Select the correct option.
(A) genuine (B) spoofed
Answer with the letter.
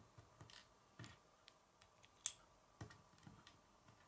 A